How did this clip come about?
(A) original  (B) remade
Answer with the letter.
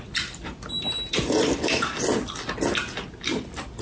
A